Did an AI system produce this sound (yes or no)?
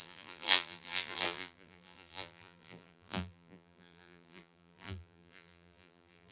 yes